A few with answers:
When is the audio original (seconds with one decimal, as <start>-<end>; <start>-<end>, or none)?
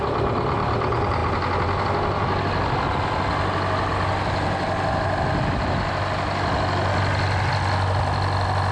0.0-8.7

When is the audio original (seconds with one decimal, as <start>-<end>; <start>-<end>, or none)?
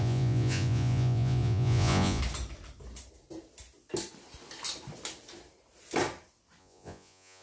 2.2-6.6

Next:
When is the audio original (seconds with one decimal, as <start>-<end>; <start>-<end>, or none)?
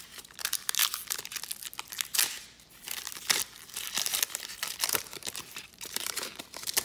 0.8-4.9